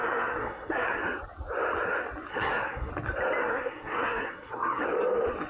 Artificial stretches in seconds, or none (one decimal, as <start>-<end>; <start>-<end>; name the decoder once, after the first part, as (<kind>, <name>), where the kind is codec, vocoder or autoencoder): 0.0-1.0 (codec, SNAC); 2.3-2.9; 3.4-4.8